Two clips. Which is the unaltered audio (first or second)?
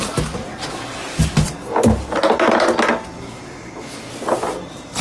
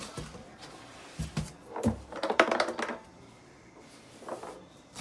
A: first